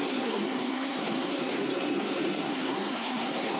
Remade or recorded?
remade